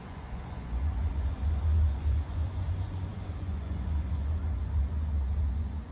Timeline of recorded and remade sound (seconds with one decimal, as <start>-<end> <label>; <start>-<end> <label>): 0.0-5.9 remade